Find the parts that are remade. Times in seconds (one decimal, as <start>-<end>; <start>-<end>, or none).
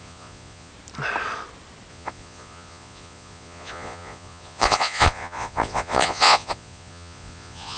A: 0.0-0.7; 1.9-7.8